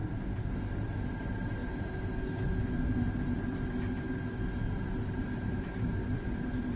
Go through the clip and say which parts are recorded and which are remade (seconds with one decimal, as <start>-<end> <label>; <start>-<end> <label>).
0.0-0.9 recorded; 0.9-1.6 remade; 1.6-5.0 recorded; 5.0-6.8 remade